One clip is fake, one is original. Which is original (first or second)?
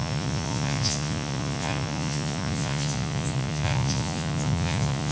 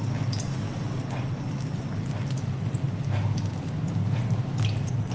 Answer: second